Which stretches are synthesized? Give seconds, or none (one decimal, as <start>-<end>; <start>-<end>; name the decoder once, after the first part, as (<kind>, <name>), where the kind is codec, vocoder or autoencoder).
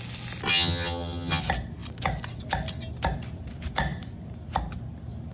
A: 0.5-1.4 (vocoder, HiFi-GAN)